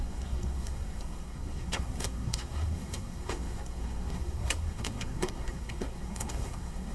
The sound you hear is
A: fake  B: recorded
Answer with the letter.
A